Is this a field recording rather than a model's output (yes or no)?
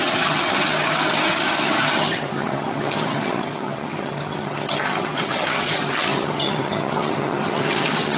no